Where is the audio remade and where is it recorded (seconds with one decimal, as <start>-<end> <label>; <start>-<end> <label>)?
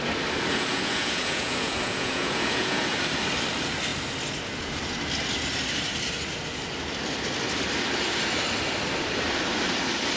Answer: 0.0-0.5 recorded; 0.5-3.0 remade; 3.0-10.2 recorded